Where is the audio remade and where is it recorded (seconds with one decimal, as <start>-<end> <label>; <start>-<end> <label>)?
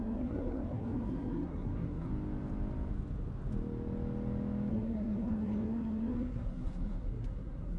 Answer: 0.0-2.1 remade; 2.1-4.7 recorded; 4.7-7.8 remade